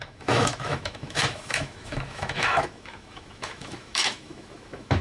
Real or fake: fake